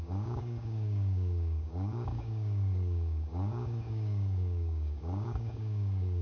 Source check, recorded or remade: remade